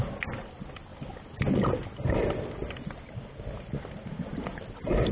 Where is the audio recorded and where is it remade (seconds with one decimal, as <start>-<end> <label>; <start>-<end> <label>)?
0.0-5.1 recorded